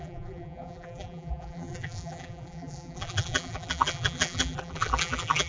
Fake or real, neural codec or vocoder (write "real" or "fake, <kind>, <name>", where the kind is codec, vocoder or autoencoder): fake, vocoder, BigVGAN v2